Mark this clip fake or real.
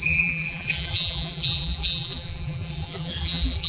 fake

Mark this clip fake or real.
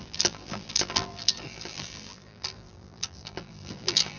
fake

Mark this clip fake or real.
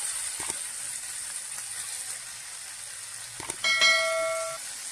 real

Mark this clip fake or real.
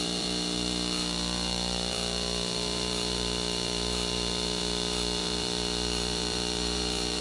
fake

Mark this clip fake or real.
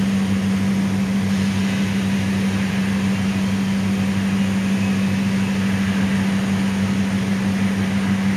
fake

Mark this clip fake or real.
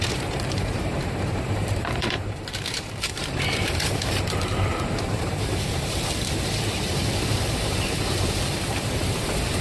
fake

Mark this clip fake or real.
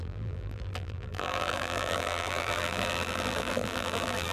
fake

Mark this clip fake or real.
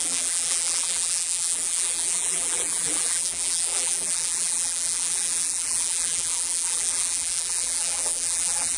fake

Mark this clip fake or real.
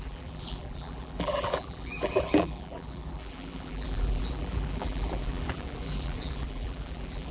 fake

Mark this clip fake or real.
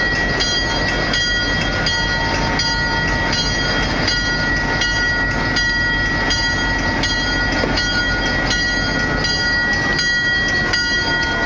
real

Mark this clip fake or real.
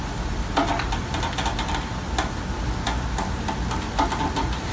real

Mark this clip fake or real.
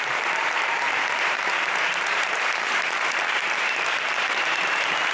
fake